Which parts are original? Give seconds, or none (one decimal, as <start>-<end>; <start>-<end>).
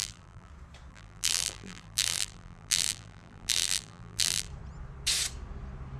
0.5-0.9; 4.5-6.0